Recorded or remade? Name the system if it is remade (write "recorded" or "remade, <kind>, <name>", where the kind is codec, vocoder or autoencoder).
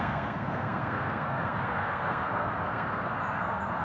remade, codec, SNAC